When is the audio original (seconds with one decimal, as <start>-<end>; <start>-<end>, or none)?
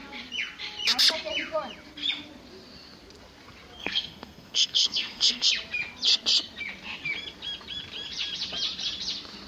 0.0-3.8; 5.5-9.5